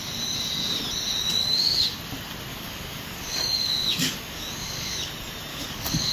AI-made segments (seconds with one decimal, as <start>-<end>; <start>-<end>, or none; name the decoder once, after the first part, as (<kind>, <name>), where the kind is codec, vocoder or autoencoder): 1.4-2.0 (codec, DAC); 2.5-5.1; 5.5-6.1